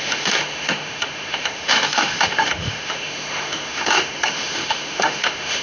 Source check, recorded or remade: remade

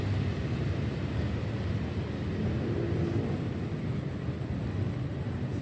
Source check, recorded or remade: recorded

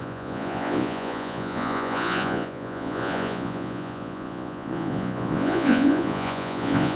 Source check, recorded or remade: remade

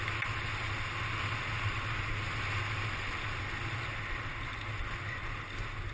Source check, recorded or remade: recorded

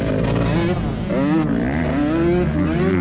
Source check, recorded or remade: recorded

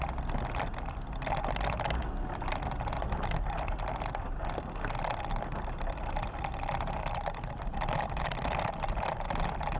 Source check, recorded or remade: recorded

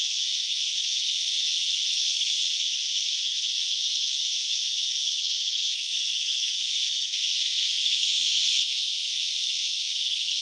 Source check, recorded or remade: remade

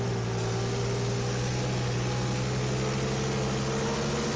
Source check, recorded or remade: recorded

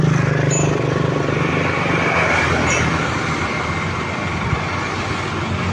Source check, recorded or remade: recorded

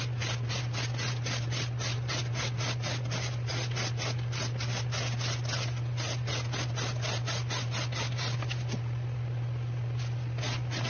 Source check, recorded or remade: recorded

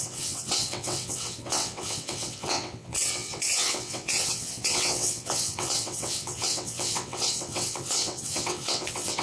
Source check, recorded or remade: remade